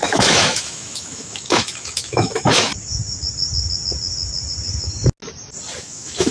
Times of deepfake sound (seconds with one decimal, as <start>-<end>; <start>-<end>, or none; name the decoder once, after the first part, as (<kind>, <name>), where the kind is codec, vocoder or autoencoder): 0.0-2.7 (autoencoder, DAC-VAE); 5.8-6.3